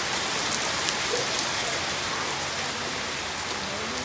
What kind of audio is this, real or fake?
real